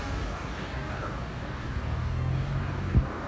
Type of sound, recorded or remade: remade